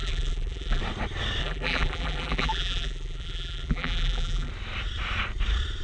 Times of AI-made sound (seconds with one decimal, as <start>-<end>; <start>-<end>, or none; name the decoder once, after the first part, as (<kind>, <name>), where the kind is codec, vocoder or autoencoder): 0.0-0.8 (vocoder, BigVGAN v2); 1.4-4.5